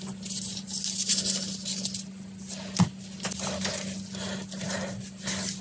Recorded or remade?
recorded